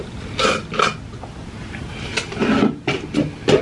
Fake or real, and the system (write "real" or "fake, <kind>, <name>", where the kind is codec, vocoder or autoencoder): real